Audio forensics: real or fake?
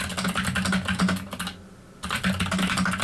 real